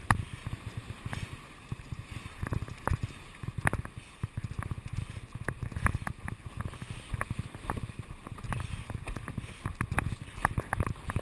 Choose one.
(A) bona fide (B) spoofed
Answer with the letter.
A